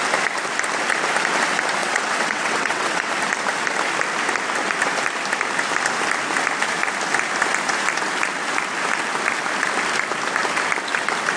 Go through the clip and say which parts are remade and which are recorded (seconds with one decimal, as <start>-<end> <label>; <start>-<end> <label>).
0.0-1.8 recorded; 1.8-3.1 remade; 3.1-11.4 recorded